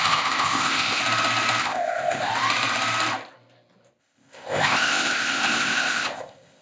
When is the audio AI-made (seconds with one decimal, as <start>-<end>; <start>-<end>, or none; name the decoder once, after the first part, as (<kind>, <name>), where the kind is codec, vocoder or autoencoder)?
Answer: 0.0-1.0 (codec, ZipCodec); 1.6-2.3; 4.0-6.6